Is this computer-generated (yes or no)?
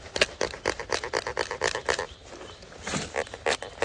no